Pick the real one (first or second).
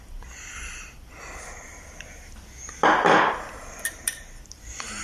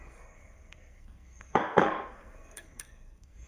first